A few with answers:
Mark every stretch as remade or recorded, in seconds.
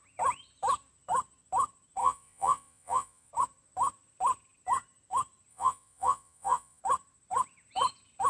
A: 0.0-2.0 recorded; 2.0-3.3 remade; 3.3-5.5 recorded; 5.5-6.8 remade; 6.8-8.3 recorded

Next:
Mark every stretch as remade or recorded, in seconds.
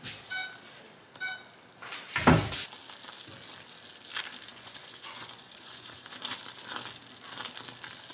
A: 0.0-4.5 recorded; 4.5-6.4 remade; 6.4-8.1 recorded